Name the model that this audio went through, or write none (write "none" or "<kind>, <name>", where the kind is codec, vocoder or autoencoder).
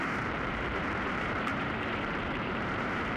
vocoder, BigVGAN v2